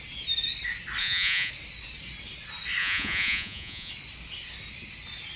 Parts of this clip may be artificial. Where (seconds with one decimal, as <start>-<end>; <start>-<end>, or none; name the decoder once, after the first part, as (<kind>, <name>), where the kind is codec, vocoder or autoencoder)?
1.0-1.5 (vocoder, Vocos); 2.8-3.9